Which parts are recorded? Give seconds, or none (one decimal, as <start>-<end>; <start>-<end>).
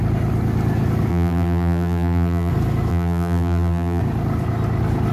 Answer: 0.0-1.1; 2.5-2.9; 4.0-5.1